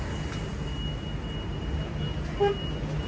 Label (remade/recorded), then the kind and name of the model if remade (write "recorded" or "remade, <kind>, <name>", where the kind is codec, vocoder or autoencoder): recorded